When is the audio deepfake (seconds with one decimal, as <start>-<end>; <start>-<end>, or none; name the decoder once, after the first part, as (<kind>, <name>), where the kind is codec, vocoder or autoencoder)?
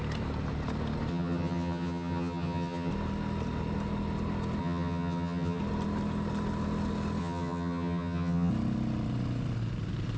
1.1-2.9 (vocoder, HiFi-GAN); 4.6-5.6; 7.2-8.5